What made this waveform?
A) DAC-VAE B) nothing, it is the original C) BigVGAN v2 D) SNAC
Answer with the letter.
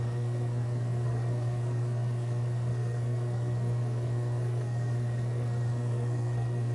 D